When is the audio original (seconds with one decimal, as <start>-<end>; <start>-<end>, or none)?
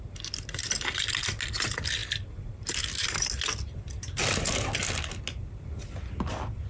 0.0-6.7